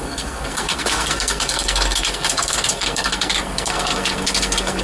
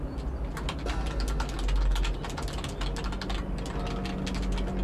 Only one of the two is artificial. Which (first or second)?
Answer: first